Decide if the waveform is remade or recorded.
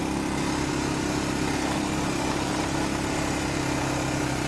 recorded